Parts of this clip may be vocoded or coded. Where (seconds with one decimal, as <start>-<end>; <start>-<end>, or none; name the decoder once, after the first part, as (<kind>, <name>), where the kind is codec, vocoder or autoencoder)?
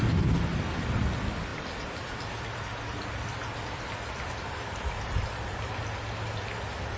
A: 1.5-5.7 (vocoder, BigVGAN v2)